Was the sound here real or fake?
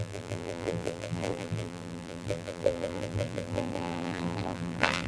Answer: fake